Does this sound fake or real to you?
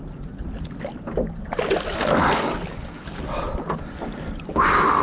real